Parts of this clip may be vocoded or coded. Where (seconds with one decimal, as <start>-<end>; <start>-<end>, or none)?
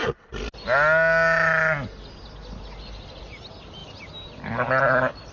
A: none